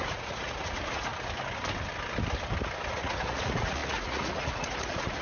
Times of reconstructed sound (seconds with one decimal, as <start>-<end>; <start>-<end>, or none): 0.0-1.1; 2.9-5.2

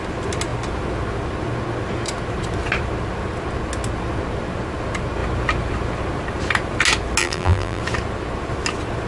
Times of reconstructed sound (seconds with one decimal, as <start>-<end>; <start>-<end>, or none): 7.2-7.8

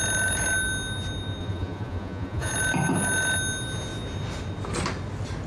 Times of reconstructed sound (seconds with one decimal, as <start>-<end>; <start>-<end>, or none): 1.4-2.5

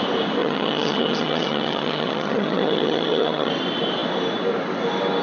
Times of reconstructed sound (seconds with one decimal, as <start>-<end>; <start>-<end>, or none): 0.4-3.5